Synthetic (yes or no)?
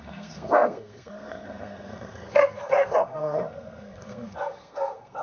yes